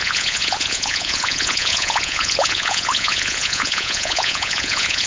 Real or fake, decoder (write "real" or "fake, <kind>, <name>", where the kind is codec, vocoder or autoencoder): fake, vocoder, Vocos